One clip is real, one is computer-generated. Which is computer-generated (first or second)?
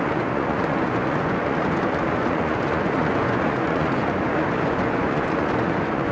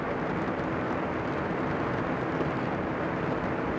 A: first